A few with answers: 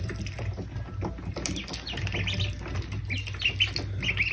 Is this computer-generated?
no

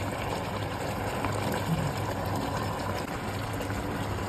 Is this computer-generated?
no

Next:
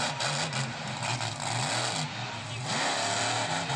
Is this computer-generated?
no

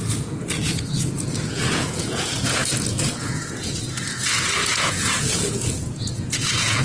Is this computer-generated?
yes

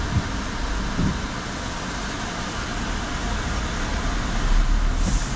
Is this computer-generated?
no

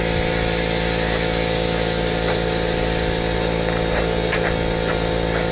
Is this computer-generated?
no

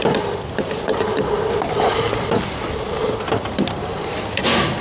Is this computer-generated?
yes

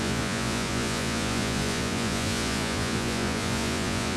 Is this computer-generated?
yes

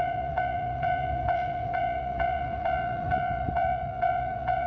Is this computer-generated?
yes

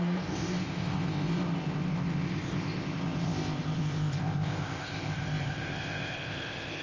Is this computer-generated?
yes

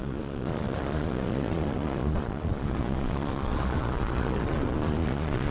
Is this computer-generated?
yes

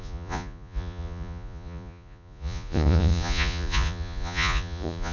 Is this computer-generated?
yes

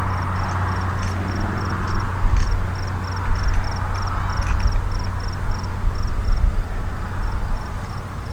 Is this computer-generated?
no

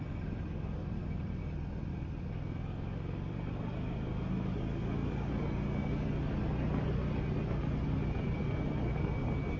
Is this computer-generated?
no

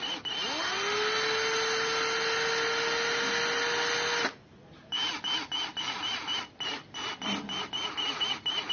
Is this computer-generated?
no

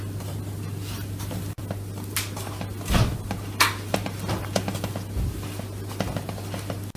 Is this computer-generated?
no